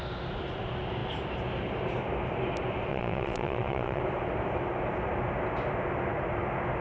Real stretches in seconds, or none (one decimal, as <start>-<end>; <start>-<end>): 0.0-2.9; 4.0-6.8